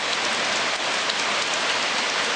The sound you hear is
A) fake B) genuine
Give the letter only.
B